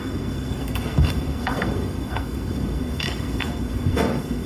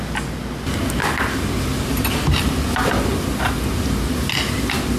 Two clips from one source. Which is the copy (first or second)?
first